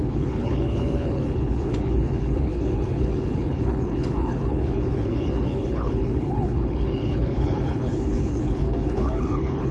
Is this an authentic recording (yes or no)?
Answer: no